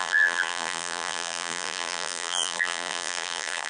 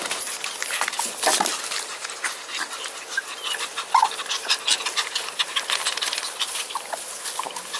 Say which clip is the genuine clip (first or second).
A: second